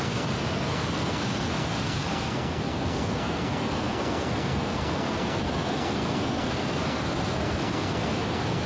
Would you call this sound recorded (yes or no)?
no